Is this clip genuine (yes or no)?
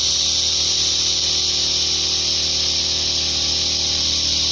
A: yes